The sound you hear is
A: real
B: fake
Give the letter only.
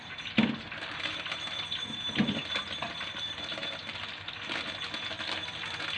A